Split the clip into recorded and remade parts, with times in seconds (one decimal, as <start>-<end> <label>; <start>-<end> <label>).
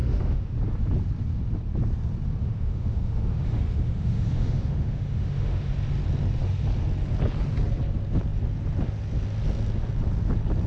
0.0-0.5 remade; 0.5-2.4 recorded; 2.4-5.7 remade; 5.7-10.7 recorded